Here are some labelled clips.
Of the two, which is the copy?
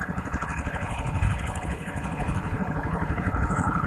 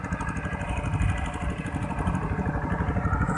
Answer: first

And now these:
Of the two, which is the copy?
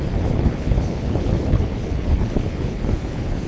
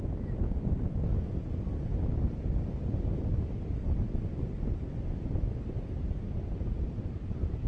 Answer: first